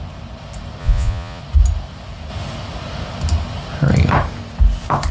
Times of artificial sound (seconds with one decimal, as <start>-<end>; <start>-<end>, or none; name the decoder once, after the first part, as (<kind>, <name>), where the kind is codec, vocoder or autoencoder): 0.8-1.4 (vocoder, Vocos)